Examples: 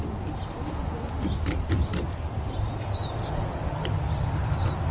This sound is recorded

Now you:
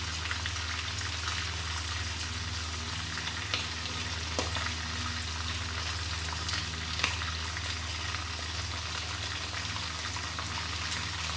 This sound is recorded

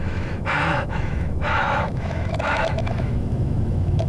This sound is remade